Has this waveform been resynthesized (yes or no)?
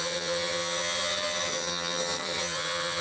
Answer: yes